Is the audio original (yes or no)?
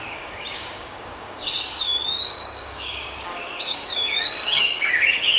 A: no